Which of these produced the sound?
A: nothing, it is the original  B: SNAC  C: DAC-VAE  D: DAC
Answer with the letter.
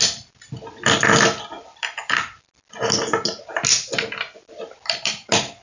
A